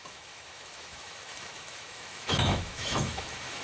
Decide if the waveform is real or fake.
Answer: fake